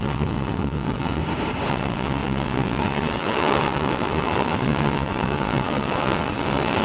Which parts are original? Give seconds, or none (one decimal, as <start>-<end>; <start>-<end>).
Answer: 1.2-1.7